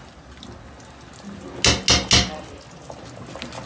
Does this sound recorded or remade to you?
recorded